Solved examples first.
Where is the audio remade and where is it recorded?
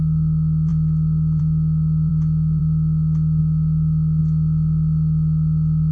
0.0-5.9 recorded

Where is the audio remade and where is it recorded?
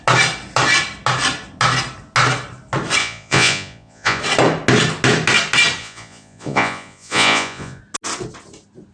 0.0-3.0 recorded; 3.0-4.2 remade; 4.2-5.8 recorded; 5.8-7.8 remade; 7.8-8.9 recorded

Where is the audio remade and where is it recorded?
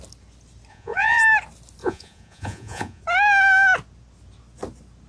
0.0-0.7 recorded; 0.7-1.2 remade; 1.2-1.8 recorded; 1.8-3.0 remade; 3.0-5.1 recorded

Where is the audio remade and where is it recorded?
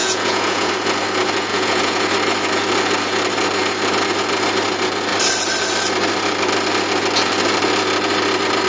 0.0-0.7 remade; 0.7-1.5 recorded; 1.5-2.0 remade; 2.0-8.7 recorded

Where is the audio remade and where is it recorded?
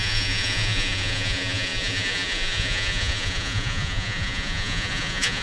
0.0-5.4 remade